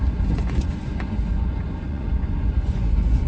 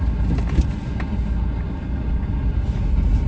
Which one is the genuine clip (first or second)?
second